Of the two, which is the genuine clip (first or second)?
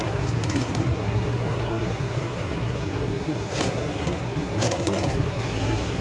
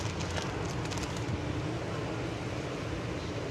second